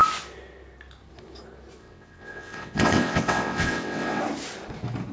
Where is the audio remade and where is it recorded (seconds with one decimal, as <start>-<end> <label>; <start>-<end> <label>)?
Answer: 0.0-1.8 recorded; 1.8-4.2 remade; 4.2-5.1 recorded